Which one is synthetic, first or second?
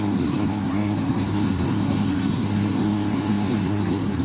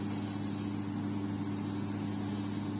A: first